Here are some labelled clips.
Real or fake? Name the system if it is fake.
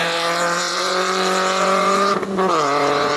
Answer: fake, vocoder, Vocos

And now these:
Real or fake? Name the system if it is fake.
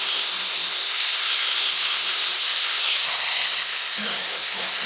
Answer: fake, codec, SNAC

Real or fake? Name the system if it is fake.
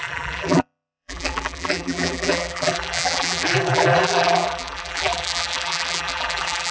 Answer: fake, vocoder, BigVGAN v2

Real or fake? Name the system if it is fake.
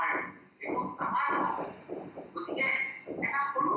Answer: real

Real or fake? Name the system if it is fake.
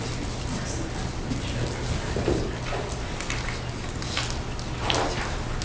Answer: real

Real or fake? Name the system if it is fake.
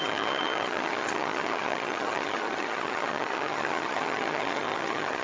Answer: fake, vocoder, HiFi-GAN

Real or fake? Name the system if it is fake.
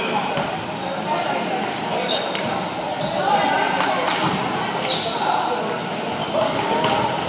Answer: real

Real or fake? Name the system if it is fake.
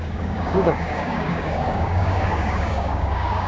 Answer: fake, codec, DAC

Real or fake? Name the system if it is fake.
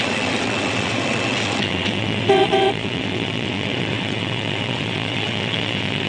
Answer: fake, vocoder, WaveNeXt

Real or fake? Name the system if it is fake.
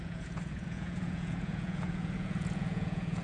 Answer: fake, vocoder, Vocos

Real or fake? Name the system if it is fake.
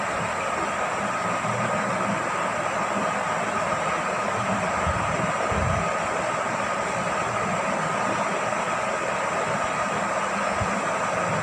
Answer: real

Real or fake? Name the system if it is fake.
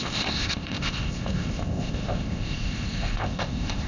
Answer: fake, codec, ZipCodec